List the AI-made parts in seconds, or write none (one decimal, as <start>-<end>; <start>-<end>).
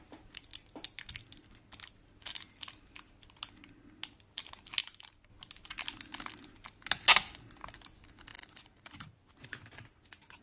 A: 4.8-5.3